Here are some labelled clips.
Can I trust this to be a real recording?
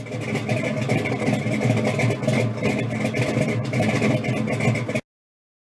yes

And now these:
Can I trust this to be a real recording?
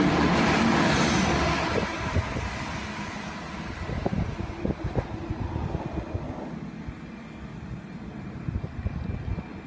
yes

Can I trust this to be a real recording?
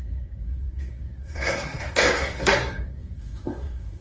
no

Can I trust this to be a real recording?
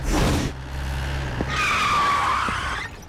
yes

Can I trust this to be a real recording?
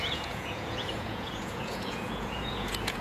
no